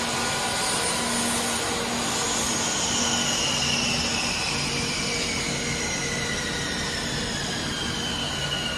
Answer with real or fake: real